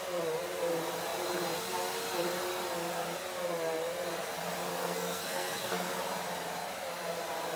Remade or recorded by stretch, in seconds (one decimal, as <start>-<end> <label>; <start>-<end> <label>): 0.0-4.7 recorded; 4.7-5.9 remade; 5.9-7.6 recorded